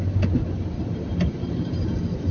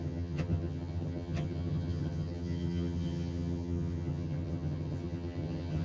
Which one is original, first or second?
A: first